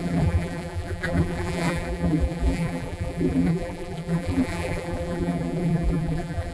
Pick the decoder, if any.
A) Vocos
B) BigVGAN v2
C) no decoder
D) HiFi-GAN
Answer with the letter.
B